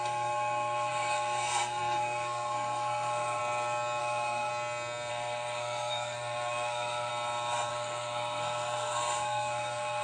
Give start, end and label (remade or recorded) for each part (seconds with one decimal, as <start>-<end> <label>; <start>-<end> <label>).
0.0-3.4 remade; 3.4-4.0 recorded; 4.0-4.5 remade; 4.5-5.1 recorded; 5.1-7.1 remade; 7.1-7.7 recorded; 7.7-10.0 remade